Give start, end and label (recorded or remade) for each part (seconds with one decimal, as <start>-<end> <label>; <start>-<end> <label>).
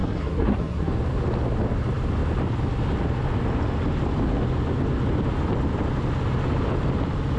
0.0-0.9 remade; 0.9-7.4 recorded